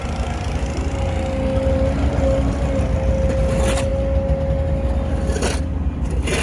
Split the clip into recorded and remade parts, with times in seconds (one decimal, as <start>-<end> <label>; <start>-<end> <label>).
0.0-6.4 recorded